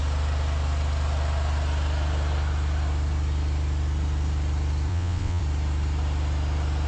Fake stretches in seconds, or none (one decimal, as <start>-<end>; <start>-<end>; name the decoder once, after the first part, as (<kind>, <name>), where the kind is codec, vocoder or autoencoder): 4.9-5.4 (vocoder, WaveNeXt)